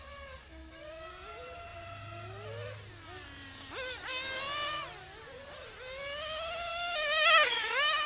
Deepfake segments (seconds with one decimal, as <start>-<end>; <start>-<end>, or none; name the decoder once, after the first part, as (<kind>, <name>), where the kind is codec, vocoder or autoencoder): 0.5-1.1 (autoencoder, DAC-VAE); 6.7-8.1